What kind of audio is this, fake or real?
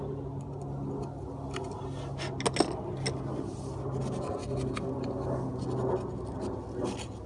real